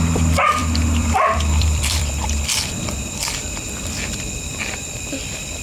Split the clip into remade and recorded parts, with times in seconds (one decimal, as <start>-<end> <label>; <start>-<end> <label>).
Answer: 0.0-5.6 remade